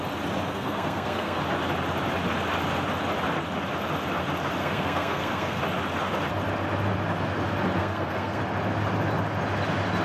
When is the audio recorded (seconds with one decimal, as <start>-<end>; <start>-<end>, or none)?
0.0-0.5; 1.4-4.6; 5.6-7.8; 8.4-10.0